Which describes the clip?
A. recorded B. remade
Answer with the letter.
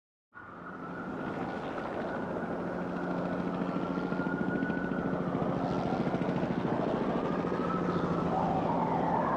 A